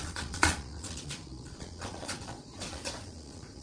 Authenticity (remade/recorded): remade